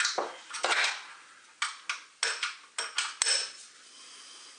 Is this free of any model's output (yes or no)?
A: yes